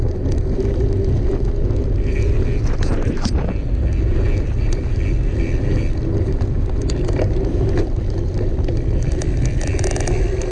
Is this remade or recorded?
recorded